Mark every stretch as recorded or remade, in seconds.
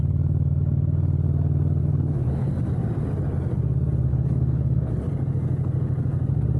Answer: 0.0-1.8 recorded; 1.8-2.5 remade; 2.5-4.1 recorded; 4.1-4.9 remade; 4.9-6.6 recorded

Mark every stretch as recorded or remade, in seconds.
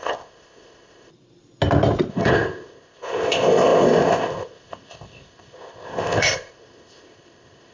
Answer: 0.0-1.1 remade; 1.1-2.1 recorded; 2.1-7.7 remade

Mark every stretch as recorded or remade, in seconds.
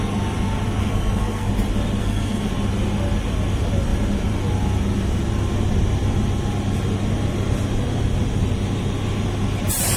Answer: 0.0-0.8 recorded; 0.8-1.5 remade; 1.5-2.0 recorded; 2.0-2.5 remade; 2.5-10.0 recorded